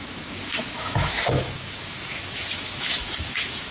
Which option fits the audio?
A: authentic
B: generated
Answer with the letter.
B